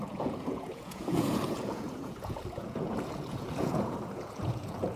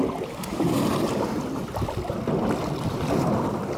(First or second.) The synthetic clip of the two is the first